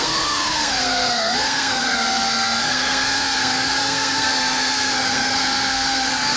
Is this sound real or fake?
fake